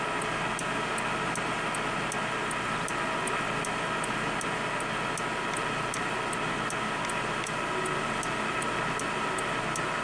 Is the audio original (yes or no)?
yes